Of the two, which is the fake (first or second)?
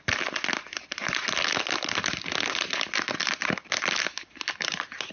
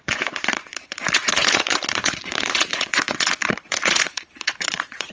second